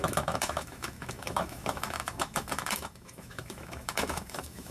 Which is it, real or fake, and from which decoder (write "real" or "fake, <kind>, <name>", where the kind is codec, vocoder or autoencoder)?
fake, autoencoder, DAC-VAE